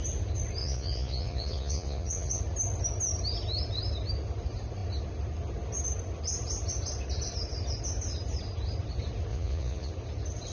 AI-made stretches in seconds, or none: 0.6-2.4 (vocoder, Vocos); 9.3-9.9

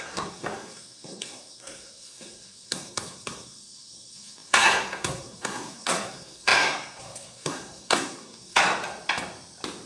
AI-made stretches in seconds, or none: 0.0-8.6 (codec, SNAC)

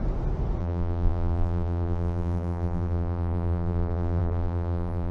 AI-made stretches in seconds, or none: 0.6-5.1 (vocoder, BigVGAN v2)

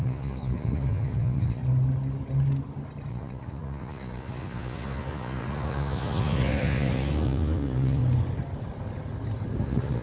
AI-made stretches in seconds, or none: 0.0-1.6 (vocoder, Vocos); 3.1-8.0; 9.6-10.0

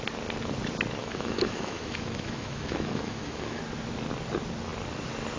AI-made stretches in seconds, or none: 1.0-3.6 (autoencoder, DAC-VAE)

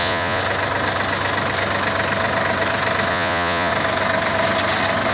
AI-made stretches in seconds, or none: 0.0-0.4 (vocoder, Vocos); 3.1-3.7

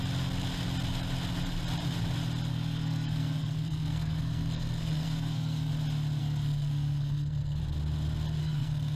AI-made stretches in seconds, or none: 2.5-5.7 (codec, SNAC); 6.2-7.6; 8.4-9.0